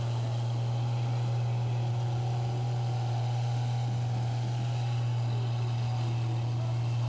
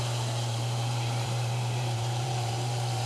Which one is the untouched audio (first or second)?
first